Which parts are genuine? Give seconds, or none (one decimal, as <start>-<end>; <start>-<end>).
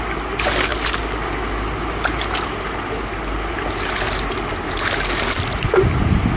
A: 0.0-6.4